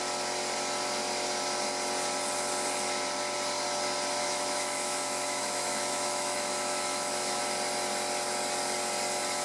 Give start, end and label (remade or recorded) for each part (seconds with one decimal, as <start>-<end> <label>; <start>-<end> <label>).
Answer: 0.0-4.2 recorded; 4.2-7.4 remade; 7.4-9.4 recorded